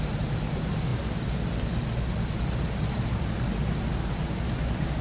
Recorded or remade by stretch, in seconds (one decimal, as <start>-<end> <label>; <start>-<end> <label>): 0.0-5.0 recorded